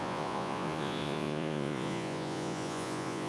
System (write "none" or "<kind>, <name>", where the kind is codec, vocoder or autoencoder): vocoder, Vocos